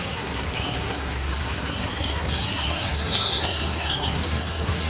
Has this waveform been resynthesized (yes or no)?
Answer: yes